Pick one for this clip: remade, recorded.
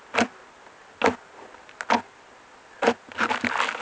recorded